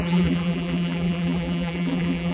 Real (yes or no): no